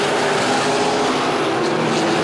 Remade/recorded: recorded